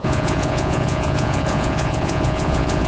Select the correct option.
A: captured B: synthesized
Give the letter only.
B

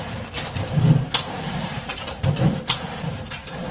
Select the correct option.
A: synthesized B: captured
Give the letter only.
B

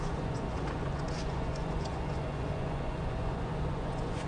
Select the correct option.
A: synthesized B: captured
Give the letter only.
A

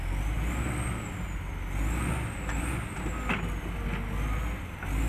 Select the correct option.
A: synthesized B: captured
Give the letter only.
B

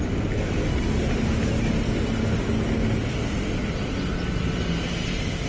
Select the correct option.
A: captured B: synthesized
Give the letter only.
A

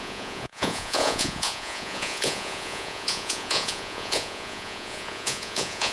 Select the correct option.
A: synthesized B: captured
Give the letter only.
A